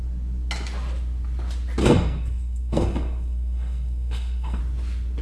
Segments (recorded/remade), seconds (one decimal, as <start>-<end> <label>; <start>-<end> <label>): 0.0-1.8 recorded; 1.8-4.6 remade; 4.6-5.2 recorded